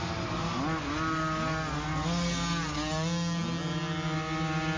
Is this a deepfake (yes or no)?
no